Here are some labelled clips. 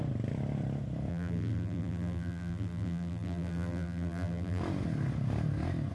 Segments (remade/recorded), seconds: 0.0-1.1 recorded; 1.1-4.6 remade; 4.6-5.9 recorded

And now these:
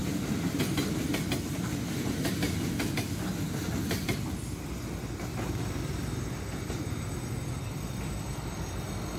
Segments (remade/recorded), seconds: 0.0-0.9 remade; 0.9-9.2 recorded

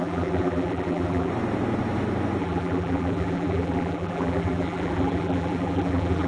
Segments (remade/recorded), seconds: 0.0-1.3 remade; 1.3-2.4 recorded; 2.4-6.3 remade

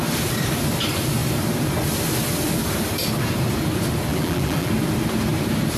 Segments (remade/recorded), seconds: 0.0-4.1 recorded; 4.1-4.7 remade; 4.7-5.8 recorded

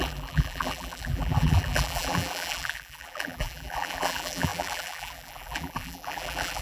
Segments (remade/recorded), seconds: 0.0-6.6 remade